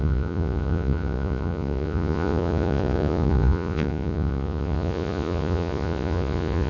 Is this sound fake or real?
fake